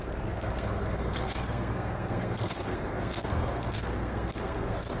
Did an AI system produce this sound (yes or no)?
yes